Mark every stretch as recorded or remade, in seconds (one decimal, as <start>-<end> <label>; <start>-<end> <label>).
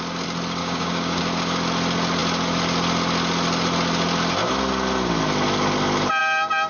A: 0.0-0.6 recorded; 0.6-1.2 remade; 1.2-6.7 recorded